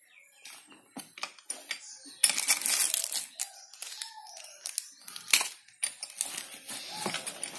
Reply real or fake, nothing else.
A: real